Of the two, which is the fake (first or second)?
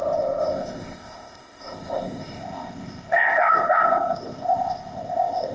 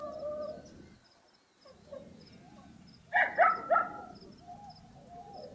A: first